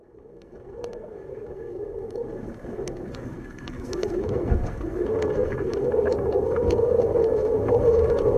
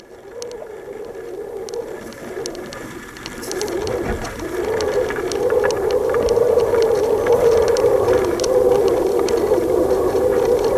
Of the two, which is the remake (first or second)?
first